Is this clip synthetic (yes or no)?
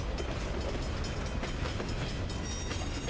no